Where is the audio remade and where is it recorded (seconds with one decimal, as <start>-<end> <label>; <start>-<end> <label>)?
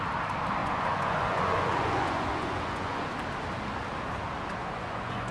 0.0-0.6 recorded; 0.6-3.1 remade; 3.1-4.6 recorded; 4.6-5.3 remade